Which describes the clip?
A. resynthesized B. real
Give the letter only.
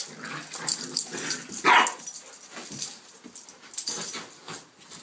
B